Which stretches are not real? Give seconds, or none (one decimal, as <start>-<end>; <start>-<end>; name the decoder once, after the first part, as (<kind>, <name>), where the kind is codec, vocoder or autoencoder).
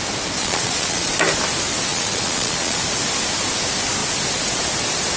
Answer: 0.4-1.1 (vocoder, Vocos); 1.9-2.8